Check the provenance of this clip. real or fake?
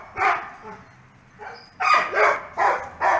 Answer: real